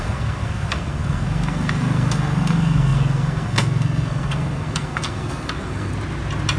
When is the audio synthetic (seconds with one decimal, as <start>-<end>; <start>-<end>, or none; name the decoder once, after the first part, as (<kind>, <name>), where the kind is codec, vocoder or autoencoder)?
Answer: 0.0-5.9 (codec, SNAC)